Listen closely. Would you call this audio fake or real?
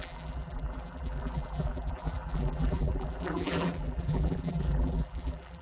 fake